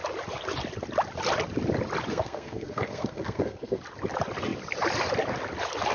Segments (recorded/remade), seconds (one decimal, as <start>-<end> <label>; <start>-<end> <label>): 0.0-2.1 recorded; 2.1-3.8 remade; 3.8-5.9 recorded